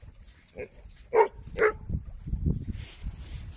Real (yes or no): yes